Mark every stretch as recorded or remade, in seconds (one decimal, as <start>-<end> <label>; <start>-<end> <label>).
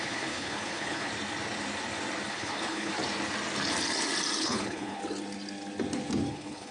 0.0-1.1 remade; 1.1-2.3 recorded; 2.3-2.9 remade; 2.9-4.4 recorded; 4.4-5.0 remade; 5.0-6.3 recorded; 6.3-6.7 remade